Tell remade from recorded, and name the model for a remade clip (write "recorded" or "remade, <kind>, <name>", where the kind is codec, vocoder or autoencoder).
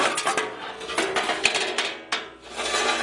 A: recorded